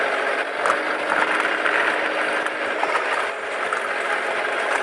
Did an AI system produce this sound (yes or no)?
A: no